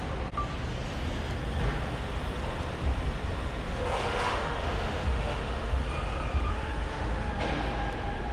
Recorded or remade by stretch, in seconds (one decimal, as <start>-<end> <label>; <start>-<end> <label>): 0.0-3.7 recorded; 3.7-5.8 remade; 5.8-6.5 recorded; 6.5-7.3 remade; 7.3-8.3 recorded